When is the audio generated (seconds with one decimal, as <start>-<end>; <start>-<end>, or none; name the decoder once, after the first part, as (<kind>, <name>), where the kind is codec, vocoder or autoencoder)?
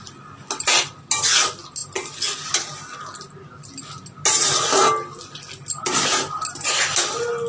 none